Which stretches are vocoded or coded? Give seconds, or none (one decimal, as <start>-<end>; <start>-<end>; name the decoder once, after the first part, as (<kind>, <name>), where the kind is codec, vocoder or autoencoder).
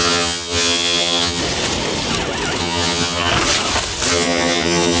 0.0-1.4 (vocoder, HiFi-GAN); 2.6-3.3; 4.1-5.0